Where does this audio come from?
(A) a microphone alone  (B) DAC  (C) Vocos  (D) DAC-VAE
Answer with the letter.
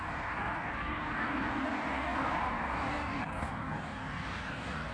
B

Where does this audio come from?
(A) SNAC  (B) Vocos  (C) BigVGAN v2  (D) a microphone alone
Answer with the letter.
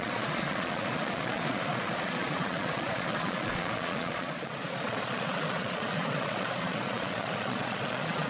B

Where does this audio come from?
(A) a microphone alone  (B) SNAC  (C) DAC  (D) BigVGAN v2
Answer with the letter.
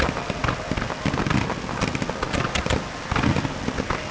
A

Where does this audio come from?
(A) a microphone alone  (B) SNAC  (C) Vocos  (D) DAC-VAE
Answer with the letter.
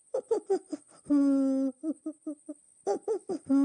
A